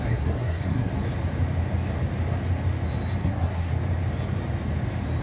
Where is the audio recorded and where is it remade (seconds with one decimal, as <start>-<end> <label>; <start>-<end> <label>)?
0.0-0.9 remade; 0.9-3.2 recorded; 3.2-3.7 remade; 3.7-5.2 recorded